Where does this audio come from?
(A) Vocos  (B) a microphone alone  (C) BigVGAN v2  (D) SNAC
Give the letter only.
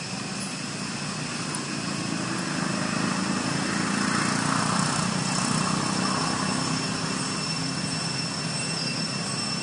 B